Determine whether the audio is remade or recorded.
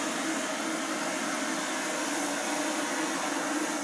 recorded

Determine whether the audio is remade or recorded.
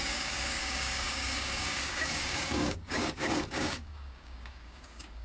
remade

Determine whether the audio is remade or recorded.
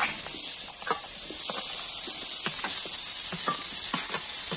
recorded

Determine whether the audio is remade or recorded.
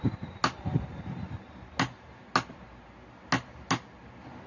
recorded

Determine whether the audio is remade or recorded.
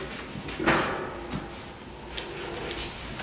recorded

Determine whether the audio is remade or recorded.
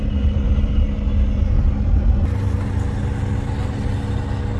recorded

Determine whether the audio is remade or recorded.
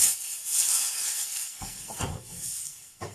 remade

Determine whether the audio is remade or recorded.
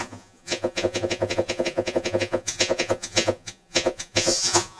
remade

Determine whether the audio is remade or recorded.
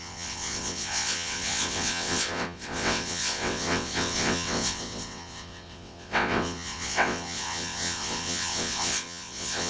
remade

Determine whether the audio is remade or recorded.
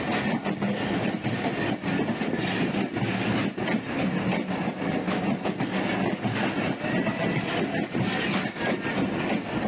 recorded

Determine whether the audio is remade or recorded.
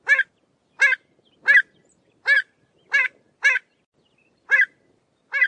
recorded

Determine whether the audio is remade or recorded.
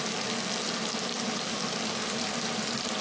recorded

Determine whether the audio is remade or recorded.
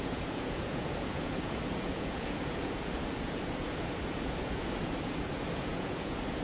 remade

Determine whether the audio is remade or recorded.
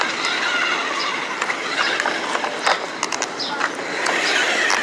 recorded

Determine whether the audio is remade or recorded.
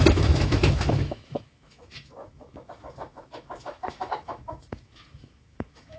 remade